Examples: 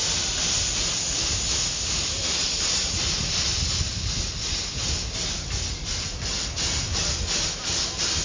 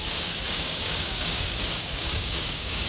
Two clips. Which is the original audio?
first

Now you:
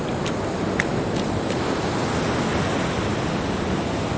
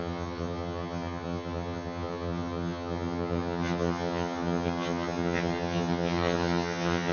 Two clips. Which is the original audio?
first